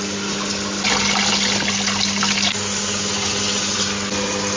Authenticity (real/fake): real